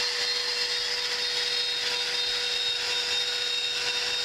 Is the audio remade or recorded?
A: recorded